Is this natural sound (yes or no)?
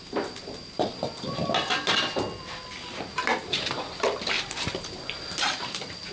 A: yes